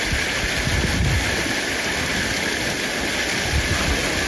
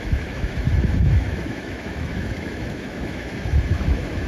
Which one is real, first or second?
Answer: first